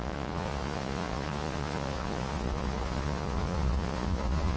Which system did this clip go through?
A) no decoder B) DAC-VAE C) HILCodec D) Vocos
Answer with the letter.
D